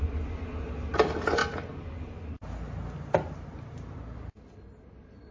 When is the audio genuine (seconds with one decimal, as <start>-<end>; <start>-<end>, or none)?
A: 0.0-5.3